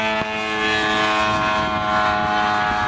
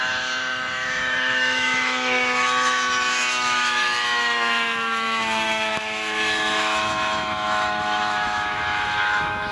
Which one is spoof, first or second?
second